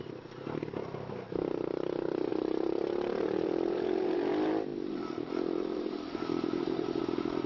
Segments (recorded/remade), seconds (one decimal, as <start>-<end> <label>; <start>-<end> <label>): 0.0-2.3 recorded; 2.3-4.3 remade; 4.3-4.7 recorded; 4.7-7.0 remade; 7.0-7.5 recorded

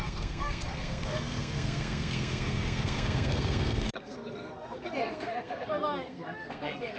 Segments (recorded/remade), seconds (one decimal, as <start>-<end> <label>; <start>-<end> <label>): 0.0-7.0 remade